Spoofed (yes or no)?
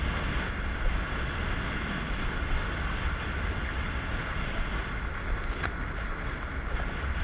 no